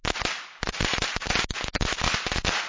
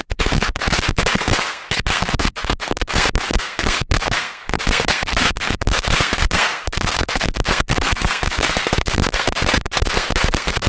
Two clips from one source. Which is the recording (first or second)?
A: first